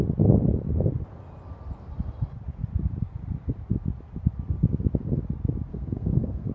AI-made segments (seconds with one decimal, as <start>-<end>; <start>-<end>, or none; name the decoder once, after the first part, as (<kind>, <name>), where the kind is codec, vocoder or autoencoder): 5.7-6.5 (codec, SNAC)